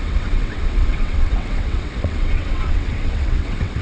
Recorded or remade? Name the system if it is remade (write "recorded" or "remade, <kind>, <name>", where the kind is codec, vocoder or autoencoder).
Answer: remade, vocoder, WaveNeXt